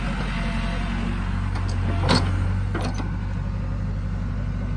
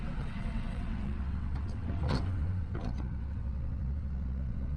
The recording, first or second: first